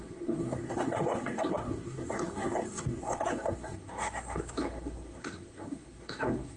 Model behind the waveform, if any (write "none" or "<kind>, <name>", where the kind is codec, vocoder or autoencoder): codec, SNAC